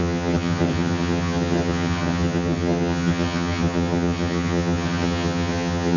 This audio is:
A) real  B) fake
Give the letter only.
B